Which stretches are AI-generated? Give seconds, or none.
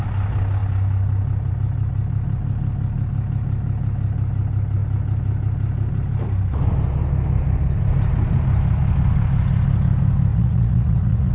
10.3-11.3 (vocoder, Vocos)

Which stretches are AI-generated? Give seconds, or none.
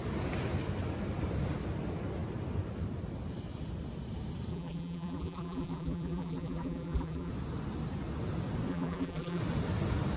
4.5-7.3 (vocoder, BigVGAN v2); 8.7-9.4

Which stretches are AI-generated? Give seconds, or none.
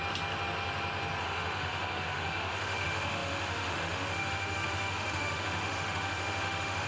1.2-6.9 (autoencoder, DAC-VAE)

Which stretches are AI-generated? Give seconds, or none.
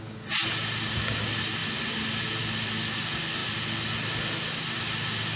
none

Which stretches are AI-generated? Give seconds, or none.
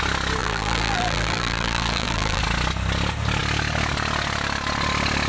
0.4-2.4 (vocoder, BigVGAN v2)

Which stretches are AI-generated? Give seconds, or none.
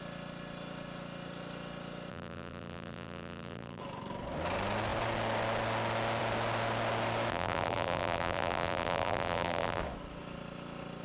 2.1-3.8 (vocoder, BigVGAN v2); 7.3-9.8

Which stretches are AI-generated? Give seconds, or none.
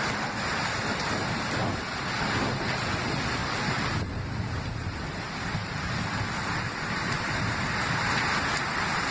none